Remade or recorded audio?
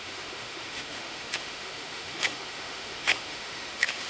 remade